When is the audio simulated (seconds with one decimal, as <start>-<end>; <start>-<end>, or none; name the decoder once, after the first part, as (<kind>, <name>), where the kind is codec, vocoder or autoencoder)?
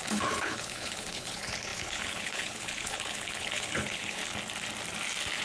0.0-4.2 (codec, HILCodec)